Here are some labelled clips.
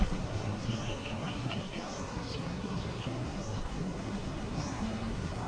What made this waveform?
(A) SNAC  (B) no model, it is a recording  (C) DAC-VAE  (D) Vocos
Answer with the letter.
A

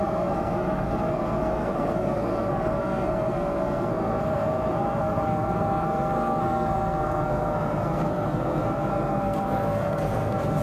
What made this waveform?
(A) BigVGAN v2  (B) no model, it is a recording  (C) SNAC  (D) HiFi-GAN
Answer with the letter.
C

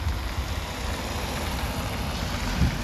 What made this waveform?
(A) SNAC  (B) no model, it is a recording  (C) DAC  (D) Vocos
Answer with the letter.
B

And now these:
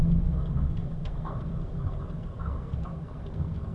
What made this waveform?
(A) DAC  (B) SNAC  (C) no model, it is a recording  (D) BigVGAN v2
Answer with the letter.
B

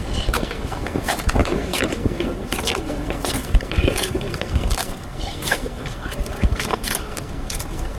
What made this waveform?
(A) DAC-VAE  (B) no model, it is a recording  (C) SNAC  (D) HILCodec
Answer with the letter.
C